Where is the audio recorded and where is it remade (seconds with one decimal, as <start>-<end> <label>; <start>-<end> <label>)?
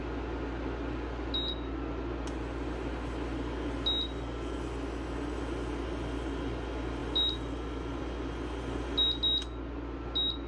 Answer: 0.0-10.5 recorded